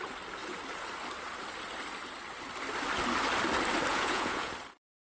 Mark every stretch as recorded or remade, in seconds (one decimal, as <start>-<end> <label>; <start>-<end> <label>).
0.0-3.9 recorded; 3.9-4.5 remade; 4.5-5.1 recorded